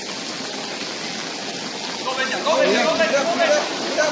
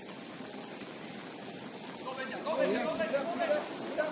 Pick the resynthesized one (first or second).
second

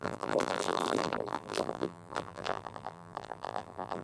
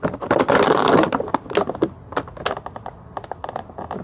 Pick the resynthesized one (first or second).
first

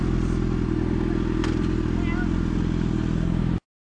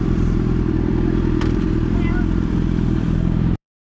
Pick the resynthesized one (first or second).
second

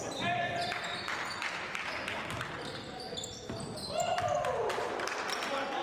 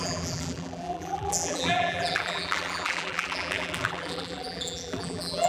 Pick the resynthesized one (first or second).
second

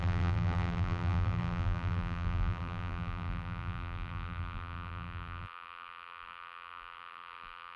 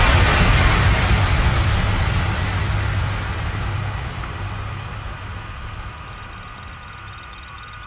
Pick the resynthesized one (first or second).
first